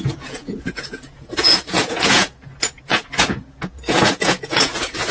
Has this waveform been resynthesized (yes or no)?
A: yes